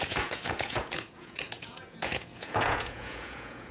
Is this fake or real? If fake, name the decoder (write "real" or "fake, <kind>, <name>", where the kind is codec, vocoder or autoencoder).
fake, vocoder, Vocos